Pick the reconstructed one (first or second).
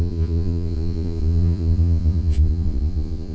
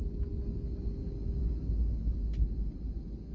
first